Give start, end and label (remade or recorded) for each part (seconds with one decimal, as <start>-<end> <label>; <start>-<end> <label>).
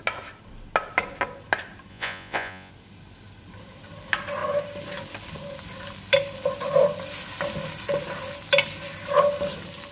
0.0-1.9 recorded; 1.9-2.7 remade; 2.7-9.9 recorded